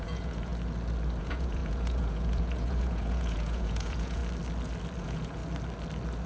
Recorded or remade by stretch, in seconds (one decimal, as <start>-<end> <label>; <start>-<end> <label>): 0.0-0.5 remade; 0.5-1.2 recorded; 1.2-4.2 remade; 4.2-5.0 recorded; 5.0-5.4 remade; 5.4-6.3 recorded